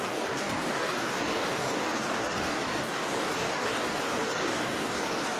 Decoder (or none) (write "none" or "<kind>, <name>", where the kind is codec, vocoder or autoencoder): codec, DAC